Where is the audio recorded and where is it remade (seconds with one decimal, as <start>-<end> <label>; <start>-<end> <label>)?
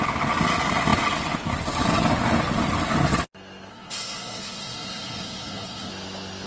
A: 0.0-3.7 recorded; 3.7-5.9 remade; 5.9-6.5 recorded